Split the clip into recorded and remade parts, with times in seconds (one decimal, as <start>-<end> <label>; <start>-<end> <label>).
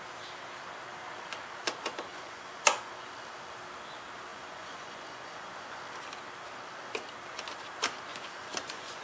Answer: 0.0-2.1 recorded; 2.1-3.1 remade; 3.1-4.3 recorded; 4.3-5.8 remade; 5.8-8.1 recorded; 8.1-9.0 remade